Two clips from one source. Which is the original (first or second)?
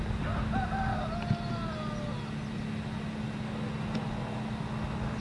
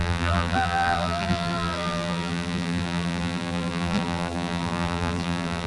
first